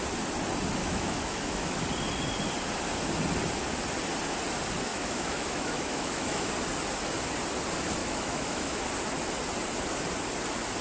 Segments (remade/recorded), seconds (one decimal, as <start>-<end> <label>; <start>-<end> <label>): 0.0-0.8 recorded; 0.8-1.8 remade; 1.8-4.9 recorded; 4.9-6.5 remade; 6.5-8.0 recorded; 8.0-8.8 remade; 8.8-10.8 recorded

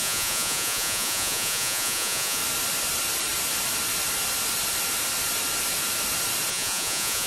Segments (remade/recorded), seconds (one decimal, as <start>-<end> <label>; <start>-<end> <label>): 0.0-2.4 remade; 2.4-6.5 recorded; 6.5-7.3 remade

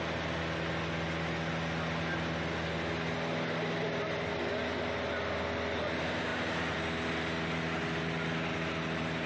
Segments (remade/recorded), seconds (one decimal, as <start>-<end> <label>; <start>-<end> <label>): 0.0-9.3 recorded

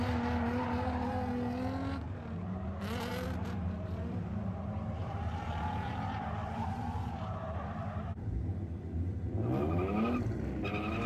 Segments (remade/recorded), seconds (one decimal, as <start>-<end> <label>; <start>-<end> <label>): 0.0-3.1 recorded; 3.1-4.5 remade; 4.5-5.0 recorded; 5.0-8.2 remade; 8.2-11.1 recorded

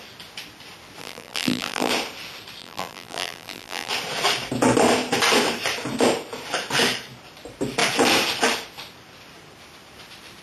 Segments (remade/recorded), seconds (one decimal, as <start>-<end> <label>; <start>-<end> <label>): 0.0-1.0 recorded; 1.0-1.9 remade; 1.9-2.6 recorded; 2.6-3.9 remade; 3.9-10.4 recorded

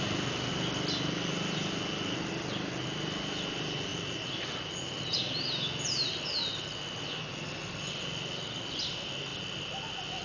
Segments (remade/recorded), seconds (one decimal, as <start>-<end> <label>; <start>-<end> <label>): 0.0-10.2 recorded